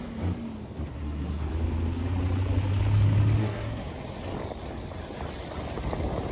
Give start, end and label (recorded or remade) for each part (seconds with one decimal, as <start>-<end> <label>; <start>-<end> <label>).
0.0-0.9 recorded; 0.9-1.5 remade; 1.5-3.4 recorded; 3.4-3.9 remade; 3.9-6.3 recorded

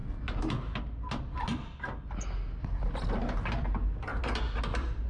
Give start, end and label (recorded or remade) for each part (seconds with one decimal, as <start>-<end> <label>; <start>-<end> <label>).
0.0-5.1 recorded

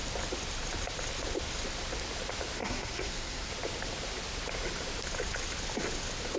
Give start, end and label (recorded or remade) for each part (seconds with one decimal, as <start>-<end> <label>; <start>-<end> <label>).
0.0-2.6 recorded; 2.6-3.5 remade; 3.5-6.4 recorded

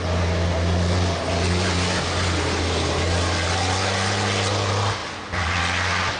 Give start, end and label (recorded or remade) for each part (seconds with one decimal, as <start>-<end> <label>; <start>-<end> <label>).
0.0-6.2 recorded

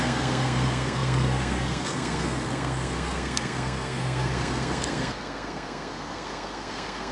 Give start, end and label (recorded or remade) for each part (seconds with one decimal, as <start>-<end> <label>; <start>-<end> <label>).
0.0-7.1 remade

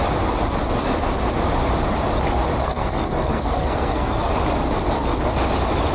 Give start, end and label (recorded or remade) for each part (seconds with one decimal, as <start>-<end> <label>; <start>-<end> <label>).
0.0-2.6 recorded; 2.6-4.3 remade; 4.3-5.9 recorded